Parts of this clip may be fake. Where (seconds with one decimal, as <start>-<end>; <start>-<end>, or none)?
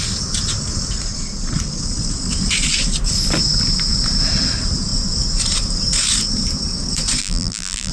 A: 7.2-7.9